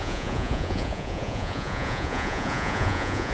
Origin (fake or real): fake